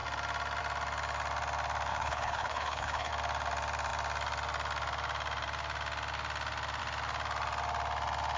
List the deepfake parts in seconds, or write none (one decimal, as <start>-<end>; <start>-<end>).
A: 1.9-3.1